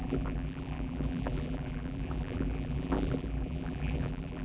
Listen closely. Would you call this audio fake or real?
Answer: fake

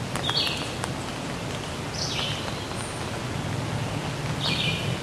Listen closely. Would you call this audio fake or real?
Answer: real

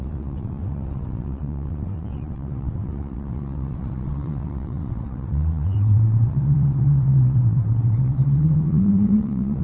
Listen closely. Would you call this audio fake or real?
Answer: fake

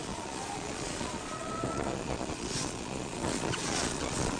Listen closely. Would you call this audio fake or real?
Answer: fake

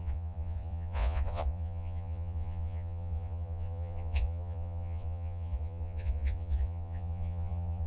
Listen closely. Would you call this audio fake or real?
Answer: fake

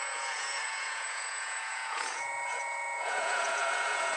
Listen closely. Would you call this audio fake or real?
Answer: fake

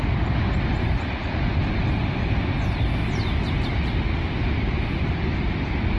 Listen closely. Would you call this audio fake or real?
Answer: real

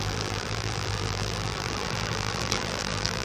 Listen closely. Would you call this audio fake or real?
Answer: fake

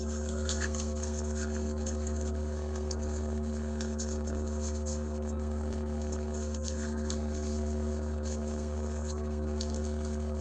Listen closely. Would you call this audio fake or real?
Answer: fake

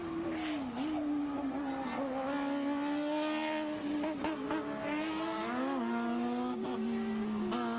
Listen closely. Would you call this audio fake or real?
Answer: real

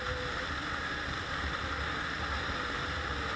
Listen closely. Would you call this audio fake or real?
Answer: real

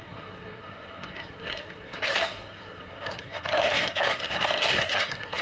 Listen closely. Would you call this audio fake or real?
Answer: fake